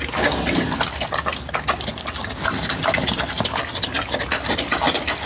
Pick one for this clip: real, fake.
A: real